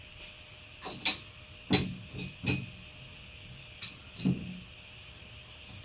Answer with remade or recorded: recorded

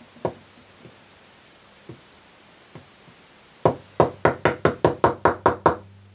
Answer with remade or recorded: recorded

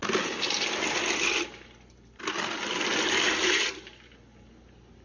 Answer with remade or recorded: recorded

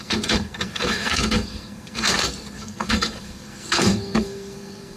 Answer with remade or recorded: remade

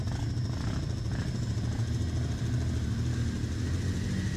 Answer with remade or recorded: recorded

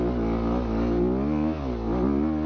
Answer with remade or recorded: recorded